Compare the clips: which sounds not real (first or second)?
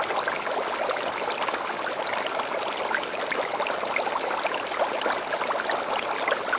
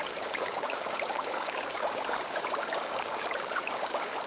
second